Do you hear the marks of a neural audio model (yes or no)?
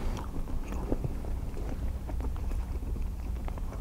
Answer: yes